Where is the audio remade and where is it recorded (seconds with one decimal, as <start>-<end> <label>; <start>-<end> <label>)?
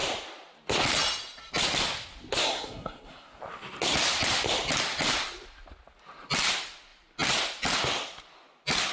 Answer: 0.0-2.4 recorded; 2.4-3.4 remade; 3.4-8.9 recorded